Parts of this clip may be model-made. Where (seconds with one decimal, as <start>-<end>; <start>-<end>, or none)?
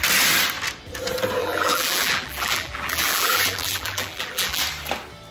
1.4-4.6